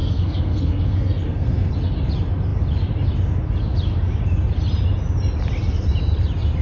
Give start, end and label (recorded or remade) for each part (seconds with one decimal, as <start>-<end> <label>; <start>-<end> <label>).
0.0-1.7 remade; 1.7-6.6 recorded